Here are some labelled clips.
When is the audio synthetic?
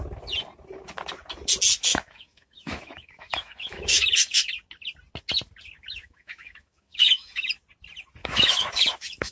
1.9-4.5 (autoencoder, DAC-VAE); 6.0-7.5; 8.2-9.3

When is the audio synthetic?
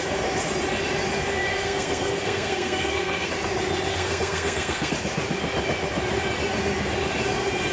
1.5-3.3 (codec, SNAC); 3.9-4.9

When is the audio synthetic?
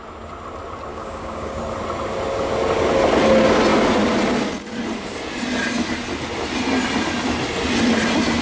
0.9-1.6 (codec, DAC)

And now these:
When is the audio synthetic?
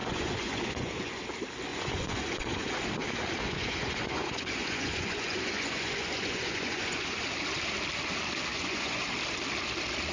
0.0-1.2 (vocoder, Vocos); 1.7-2.7; 3.4-7.2; 8.5-9.0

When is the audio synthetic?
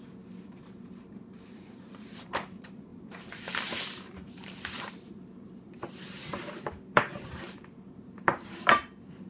0.0-9.3 (vocoder, BigVGAN v2)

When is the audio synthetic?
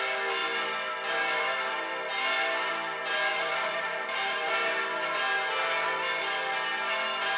3.3-4.5 (vocoder, BigVGAN v2)